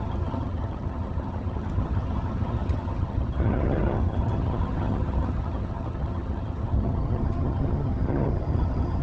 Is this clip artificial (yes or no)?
yes